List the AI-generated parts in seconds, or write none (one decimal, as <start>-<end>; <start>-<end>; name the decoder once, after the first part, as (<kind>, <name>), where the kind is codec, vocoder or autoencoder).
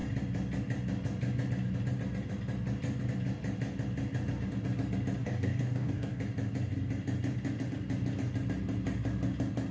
5.2-6.2 (codec, DAC)